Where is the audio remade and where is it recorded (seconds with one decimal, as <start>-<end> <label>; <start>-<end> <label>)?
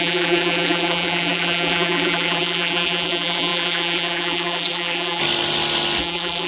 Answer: 0.0-5.2 remade; 5.2-6.0 recorded; 6.0-6.5 remade